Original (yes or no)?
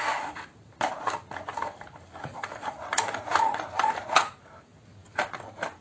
yes